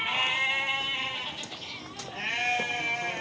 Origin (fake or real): real